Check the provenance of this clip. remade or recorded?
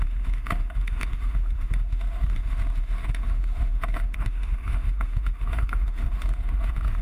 remade